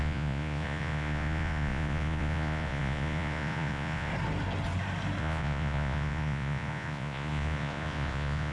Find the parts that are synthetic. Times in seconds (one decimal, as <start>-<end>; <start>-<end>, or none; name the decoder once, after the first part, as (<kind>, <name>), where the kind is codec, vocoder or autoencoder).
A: 0.0-4.1 (vocoder, Vocos); 5.2-8.5